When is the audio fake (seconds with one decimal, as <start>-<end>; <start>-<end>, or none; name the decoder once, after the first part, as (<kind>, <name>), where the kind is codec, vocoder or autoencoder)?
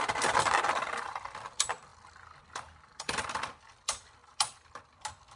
none